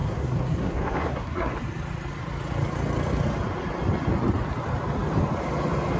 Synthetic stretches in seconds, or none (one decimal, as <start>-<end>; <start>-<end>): 0.0-1.5